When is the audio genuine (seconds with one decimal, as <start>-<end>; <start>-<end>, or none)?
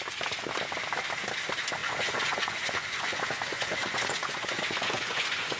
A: 0.0-1.8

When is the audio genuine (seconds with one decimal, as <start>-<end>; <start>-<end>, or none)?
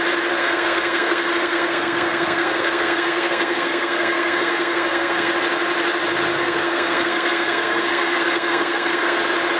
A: 0.0-0.4; 5.3-6.3; 9.2-9.6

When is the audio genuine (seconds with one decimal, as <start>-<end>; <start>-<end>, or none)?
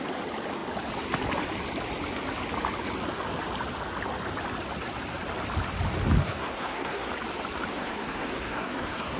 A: 0.0-6.2; 7.1-7.7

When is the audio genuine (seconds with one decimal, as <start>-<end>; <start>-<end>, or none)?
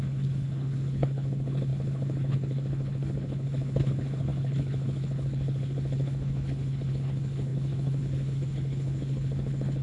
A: none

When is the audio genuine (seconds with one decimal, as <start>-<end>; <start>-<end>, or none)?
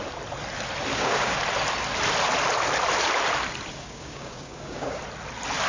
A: 0.0-0.9; 1.4-3.7; 5.0-5.7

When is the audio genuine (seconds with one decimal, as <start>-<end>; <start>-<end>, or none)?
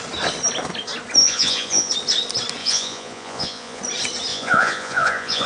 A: 0.0-1.2; 1.9-2.6; 3.8-4.3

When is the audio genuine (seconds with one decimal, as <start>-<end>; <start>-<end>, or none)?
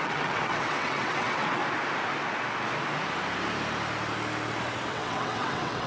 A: 1.6-4.9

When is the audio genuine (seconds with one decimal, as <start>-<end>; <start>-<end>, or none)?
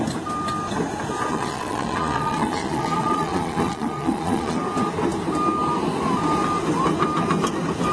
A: 0.0-1.3; 4.6-7.9